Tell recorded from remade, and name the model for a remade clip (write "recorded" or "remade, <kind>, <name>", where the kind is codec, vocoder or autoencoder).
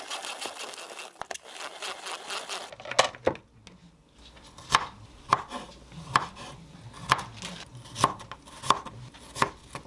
recorded